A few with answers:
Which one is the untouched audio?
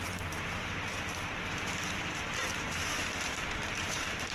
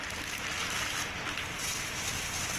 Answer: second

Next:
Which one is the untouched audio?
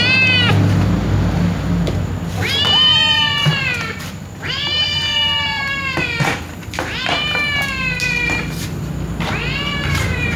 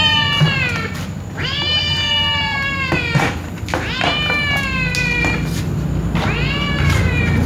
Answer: second